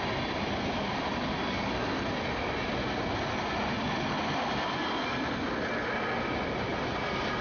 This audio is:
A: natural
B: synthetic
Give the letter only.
A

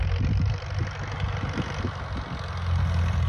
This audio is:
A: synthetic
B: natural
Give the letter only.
B